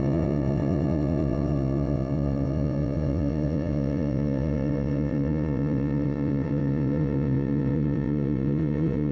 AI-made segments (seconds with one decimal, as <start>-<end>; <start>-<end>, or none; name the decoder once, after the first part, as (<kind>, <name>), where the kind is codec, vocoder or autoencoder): 0.0-9.1 (vocoder, WaveNeXt)